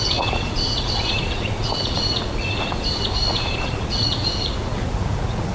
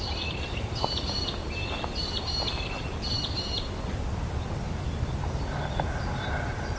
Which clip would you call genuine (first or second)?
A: second